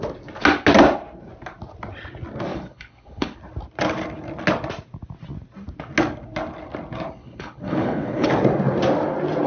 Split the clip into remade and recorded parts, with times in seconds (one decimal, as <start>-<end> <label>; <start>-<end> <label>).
0.0-2.5 recorded; 2.5-3.4 remade; 3.4-7.2 recorded; 7.2-8.3 remade; 8.3-9.5 recorded